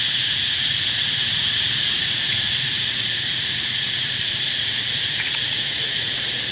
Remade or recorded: remade